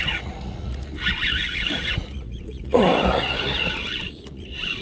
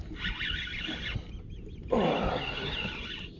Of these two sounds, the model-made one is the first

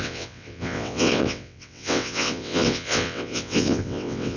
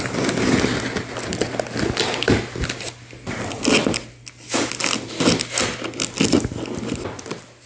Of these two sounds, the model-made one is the first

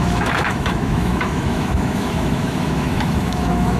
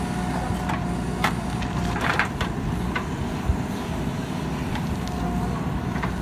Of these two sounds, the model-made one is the first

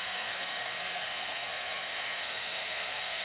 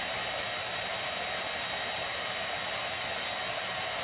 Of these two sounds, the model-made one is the first